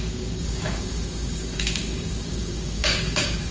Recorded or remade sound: remade